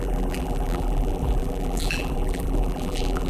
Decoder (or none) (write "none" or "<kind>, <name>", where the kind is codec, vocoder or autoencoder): vocoder, BigVGAN v2